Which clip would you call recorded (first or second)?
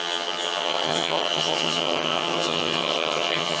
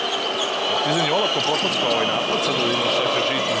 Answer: second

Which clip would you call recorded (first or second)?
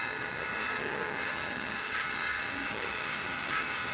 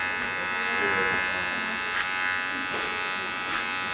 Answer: second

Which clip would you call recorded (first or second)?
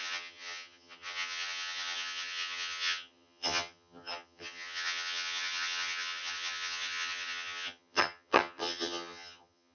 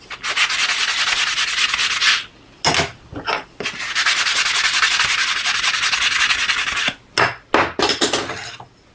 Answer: second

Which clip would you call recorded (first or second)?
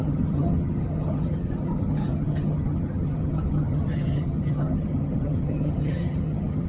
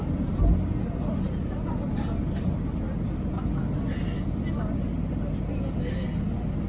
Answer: second